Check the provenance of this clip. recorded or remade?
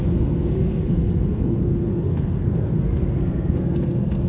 remade